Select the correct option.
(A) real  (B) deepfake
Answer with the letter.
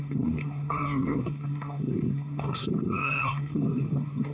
B